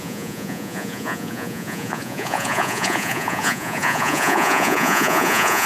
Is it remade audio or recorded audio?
remade